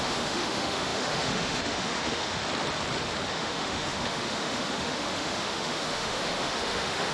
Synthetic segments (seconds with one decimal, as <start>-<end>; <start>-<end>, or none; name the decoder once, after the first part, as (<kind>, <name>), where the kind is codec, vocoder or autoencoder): 0.0-2.4 (autoencoder, DAC-VAE); 3.3-7.1